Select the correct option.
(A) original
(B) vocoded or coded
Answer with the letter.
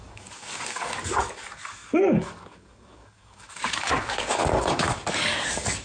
B